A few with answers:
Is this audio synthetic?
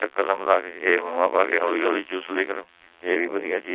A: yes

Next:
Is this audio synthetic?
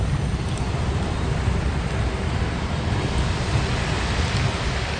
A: no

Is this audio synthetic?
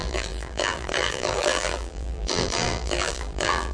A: yes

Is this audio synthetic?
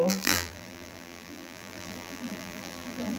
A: yes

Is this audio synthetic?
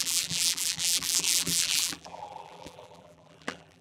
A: yes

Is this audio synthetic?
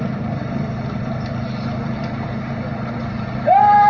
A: yes